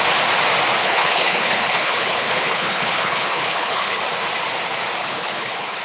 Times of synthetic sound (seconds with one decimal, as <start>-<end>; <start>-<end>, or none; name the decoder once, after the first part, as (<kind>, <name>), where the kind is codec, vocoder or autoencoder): 0.8-4.0 (codec, HILCodec); 5.0-5.8